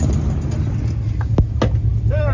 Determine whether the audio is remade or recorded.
recorded